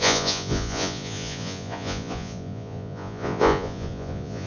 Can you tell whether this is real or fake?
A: fake